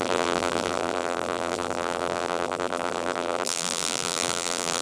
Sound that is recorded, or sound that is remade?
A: remade